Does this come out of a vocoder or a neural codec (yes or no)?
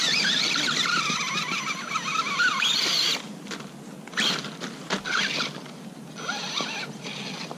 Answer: no